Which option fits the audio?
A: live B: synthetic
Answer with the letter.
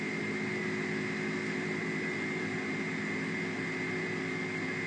A